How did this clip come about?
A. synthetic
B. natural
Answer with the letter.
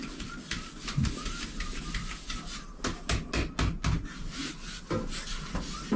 B